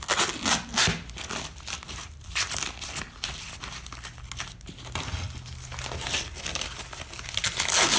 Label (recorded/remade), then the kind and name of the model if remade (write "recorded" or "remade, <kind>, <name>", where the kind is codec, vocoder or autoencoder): recorded